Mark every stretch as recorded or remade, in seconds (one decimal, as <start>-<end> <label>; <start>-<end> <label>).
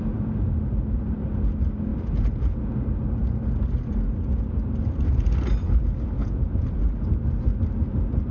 0.0-6.2 recorded; 6.2-6.8 remade; 6.8-8.3 recorded